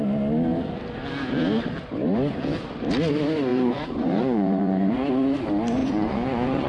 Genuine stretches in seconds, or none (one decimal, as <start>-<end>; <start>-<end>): 0.0-3.5; 5.1-5.8